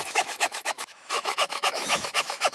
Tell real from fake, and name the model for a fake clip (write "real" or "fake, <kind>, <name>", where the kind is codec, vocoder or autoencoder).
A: fake, autoencoder, DAC-VAE